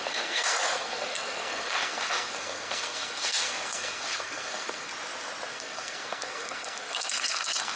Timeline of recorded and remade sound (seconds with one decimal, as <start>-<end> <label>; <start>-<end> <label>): 0.0-4.9 remade; 4.9-5.5 recorded; 5.5-7.8 remade